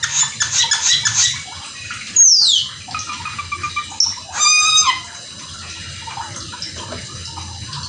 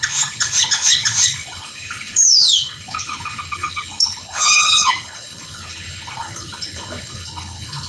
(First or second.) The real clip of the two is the first